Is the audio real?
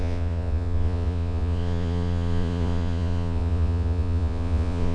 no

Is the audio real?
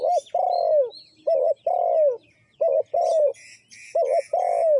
yes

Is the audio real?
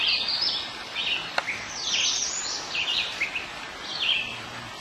yes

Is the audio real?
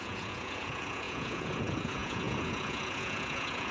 no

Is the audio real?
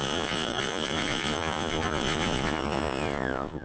no